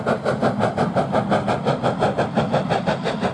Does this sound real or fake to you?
real